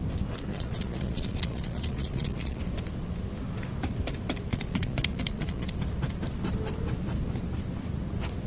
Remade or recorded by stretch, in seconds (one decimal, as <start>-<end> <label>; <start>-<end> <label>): 0.0-0.5 recorded; 0.5-2.6 remade; 2.6-4.5 recorded; 4.5-5.7 remade; 5.7-8.5 recorded